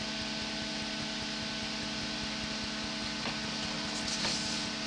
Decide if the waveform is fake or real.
real